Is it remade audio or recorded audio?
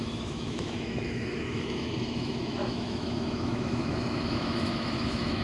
remade